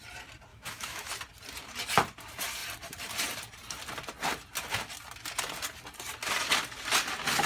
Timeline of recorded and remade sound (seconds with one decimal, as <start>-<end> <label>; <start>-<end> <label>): 0.0-0.5 recorded; 0.5-1.1 remade; 1.1-7.5 recorded

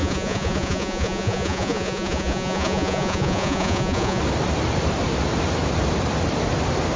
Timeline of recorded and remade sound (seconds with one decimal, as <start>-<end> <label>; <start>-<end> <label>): 0.0-4.2 remade; 4.2-7.0 recorded

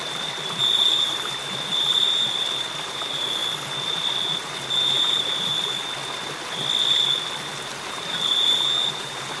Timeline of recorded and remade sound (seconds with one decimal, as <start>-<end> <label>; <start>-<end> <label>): 0.0-3.4 remade; 3.4-4.2 recorded; 4.2-6.0 remade; 6.0-6.9 recorded; 6.9-9.4 remade

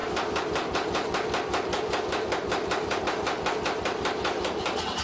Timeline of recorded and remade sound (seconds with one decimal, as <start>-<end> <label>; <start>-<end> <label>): 0.0-5.0 recorded

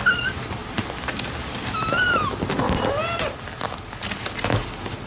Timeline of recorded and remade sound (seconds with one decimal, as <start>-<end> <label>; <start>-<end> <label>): 0.0-5.1 recorded

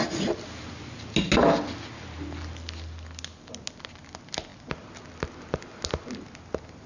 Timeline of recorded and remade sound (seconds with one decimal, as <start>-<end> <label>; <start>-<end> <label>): 0.0-6.9 recorded

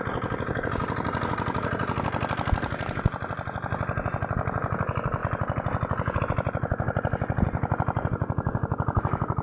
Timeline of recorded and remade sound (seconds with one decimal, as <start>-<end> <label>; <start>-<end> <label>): 0.0-9.4 recorded

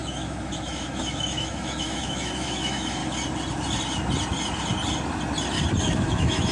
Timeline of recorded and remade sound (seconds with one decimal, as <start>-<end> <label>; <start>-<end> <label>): 0.0-3.0 remade; 3.0-5.8 recorded; 5.8-6.5 remade